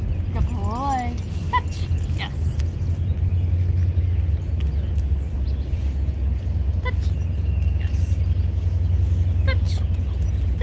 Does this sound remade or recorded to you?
recorded